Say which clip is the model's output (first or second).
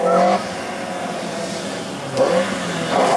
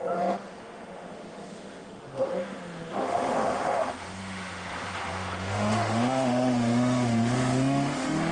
second